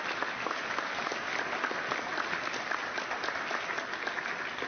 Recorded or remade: recorded